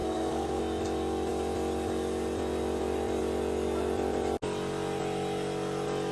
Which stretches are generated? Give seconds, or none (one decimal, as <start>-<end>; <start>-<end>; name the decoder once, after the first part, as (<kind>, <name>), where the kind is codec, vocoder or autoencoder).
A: 0.0-0.6 (codec, SNAC)